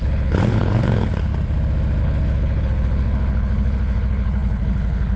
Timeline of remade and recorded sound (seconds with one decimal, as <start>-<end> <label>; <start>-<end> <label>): 0.0-1.3 remade; 1.3-2.0 recorded; 2.0-5.2 remade